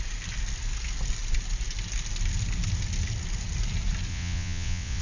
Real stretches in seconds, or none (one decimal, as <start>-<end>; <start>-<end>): 0.0-4.1